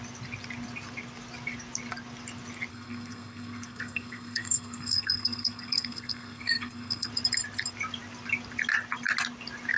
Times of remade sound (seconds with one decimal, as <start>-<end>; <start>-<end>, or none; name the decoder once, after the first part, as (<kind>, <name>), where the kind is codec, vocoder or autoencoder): 2.7-7.1 (codec, SNAC)